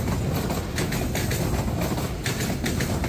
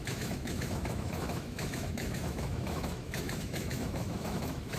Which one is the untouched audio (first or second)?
first